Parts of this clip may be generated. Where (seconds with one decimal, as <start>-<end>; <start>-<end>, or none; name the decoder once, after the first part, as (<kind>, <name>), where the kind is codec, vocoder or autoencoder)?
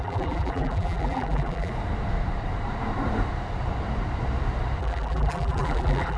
0.0-1.7 (vocoder, BigVGAN v2); 4.8-6.2